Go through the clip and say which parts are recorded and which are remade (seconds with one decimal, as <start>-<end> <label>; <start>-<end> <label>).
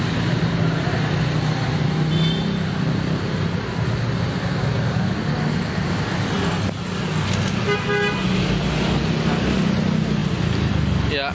0.0-11.3 recorded